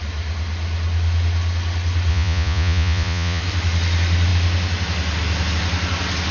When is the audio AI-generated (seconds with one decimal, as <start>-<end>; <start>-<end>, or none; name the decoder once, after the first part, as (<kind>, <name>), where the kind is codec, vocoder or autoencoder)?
2.1-3.4 (vocoder, Vocos)